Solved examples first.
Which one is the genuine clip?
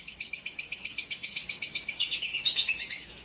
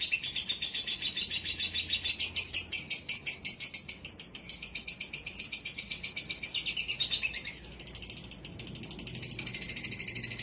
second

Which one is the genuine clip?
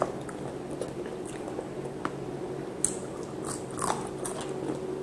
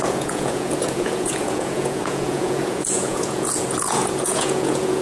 first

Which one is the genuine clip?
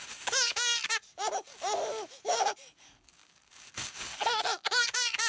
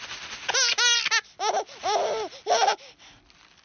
second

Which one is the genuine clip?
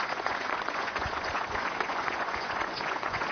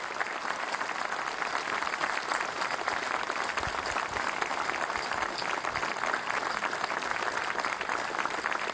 second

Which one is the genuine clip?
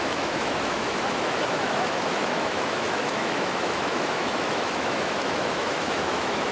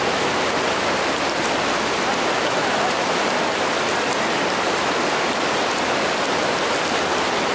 second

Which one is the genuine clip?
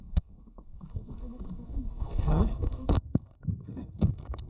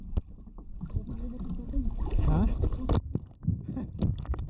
second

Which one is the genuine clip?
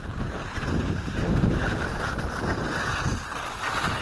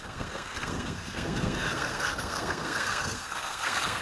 first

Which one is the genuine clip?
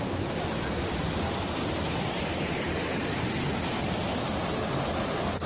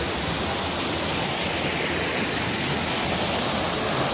second